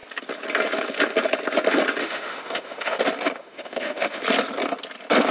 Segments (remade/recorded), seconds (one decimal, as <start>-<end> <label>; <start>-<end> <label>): 0.0-2.0 recorded; 2.0-3.0 remade; 3.0-3.4 recorded; 3.4-4.2 remade; 4.2-5.3 recorded